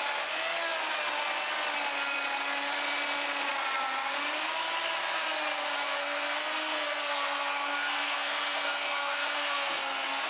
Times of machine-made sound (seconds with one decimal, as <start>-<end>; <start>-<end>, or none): 6.0-10.3